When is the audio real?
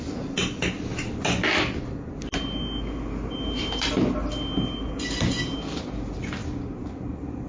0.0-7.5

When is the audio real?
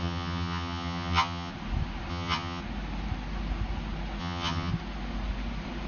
1.5-2.1; 2.6-4.2; 4.7-5.9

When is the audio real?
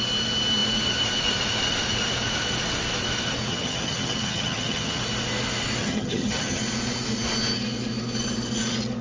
0.0-3.5; 5.0-5.8; 6.6-9.0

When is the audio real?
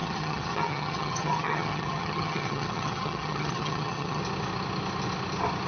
4.2-5.7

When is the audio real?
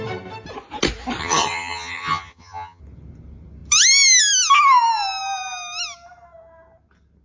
0.0-1.2; 2.8-7.2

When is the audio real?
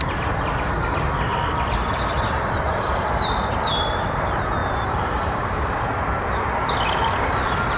0.0-7.8